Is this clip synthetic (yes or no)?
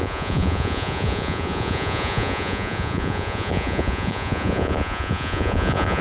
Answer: yes